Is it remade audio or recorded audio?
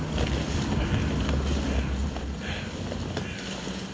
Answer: recorded